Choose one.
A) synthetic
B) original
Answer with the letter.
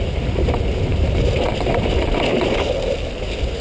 B